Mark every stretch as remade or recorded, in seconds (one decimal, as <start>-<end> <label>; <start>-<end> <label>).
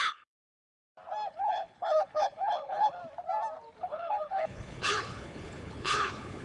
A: 0.0-0.7 remade; 0.7-1.3 recorded; 1.3-3.0 remade; 3.0-3.8 recorded; 3.8-6.4 remade